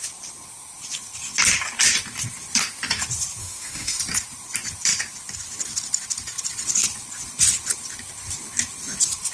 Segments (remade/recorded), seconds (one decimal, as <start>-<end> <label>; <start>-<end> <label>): 0.0-3.4 recorded; 3.4-4.0 remade; 4.0-9.3 recorded